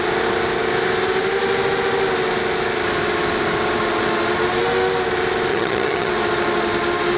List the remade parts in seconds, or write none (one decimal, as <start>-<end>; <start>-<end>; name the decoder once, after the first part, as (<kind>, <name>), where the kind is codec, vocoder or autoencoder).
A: 5.5-6.1 (vocoder, HiFi-GAN)